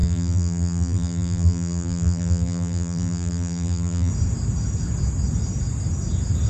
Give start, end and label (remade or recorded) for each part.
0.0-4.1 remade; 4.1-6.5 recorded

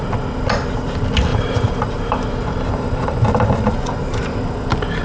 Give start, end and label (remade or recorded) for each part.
0.0-1.3 recorded; 1.3-3.2 remade; 3.2-5.0 recorded

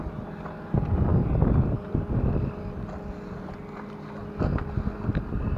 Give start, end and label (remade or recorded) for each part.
0.0-5.6 recorded

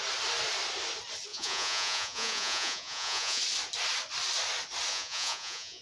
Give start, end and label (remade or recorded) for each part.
0.0-1.3 recorded; 1.3-3.4 remade; 3.4-4.9 recorded; 4.9-5.8 remade

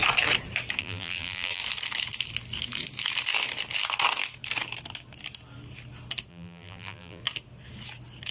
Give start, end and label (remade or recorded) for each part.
0.0-0.8 recorded; 0.8-1.6 remade; 1.6-6.3 recorded; 6.3-7.2 remade; 7.2-8.3 recorded